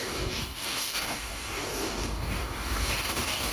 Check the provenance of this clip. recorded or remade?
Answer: remade